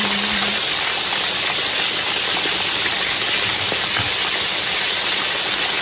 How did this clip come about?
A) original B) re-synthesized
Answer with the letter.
A